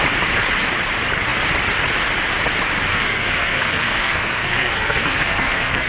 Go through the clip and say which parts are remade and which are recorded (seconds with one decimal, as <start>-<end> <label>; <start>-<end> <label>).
0.0-2.9 recorded; 2.9-5.9 remade